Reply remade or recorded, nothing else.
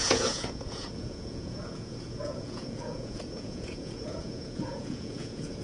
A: remade